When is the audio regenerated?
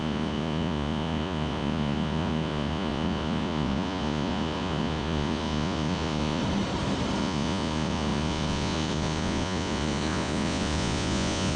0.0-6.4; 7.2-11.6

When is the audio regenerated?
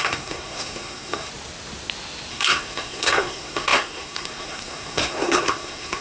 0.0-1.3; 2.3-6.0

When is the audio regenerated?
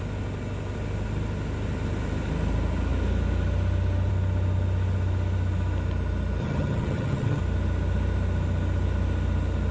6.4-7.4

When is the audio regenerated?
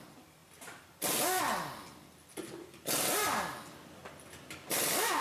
none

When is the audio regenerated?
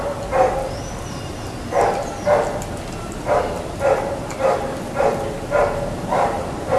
6.0-6.8